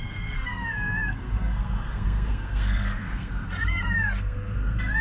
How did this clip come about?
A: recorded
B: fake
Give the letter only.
B